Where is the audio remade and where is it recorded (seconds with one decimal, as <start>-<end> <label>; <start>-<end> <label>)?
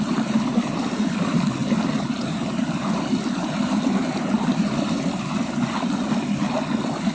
0.0-7.1 recorded